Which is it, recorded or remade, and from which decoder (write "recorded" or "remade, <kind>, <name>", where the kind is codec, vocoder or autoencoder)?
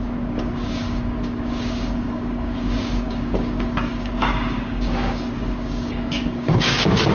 remade, codec, DAC